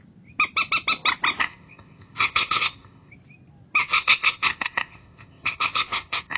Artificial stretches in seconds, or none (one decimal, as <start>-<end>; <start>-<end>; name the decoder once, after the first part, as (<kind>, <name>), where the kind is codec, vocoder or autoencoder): 1.4-3.1 (codec, ZipCodec); 3.8-6.4